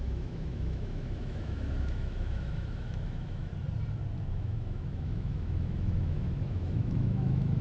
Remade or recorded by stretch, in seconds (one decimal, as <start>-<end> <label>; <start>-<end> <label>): 0.0-3.5 remade; 3.5-4.3 recorded; 4.3-7.6 remade